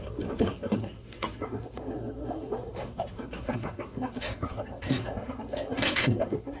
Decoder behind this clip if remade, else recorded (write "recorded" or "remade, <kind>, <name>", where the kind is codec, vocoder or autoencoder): remade, codec, SNAC